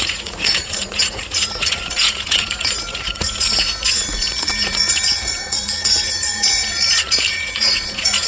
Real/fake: fake